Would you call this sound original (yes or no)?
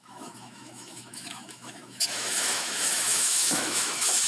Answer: no